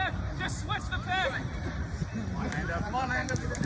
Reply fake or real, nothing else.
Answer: fake